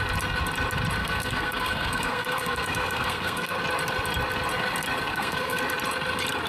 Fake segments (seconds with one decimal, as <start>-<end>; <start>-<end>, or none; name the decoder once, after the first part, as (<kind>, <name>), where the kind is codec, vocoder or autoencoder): 1.0-3.6 (codec, SNAC); 5.1-5.6